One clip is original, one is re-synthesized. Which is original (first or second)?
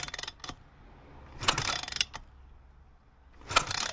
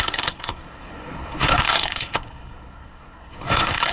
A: first